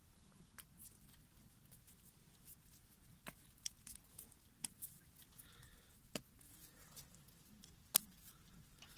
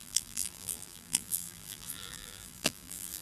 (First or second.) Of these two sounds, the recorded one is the first